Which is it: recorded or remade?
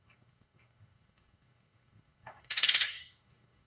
remade